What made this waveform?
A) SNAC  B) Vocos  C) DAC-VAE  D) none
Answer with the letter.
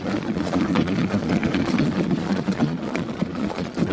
B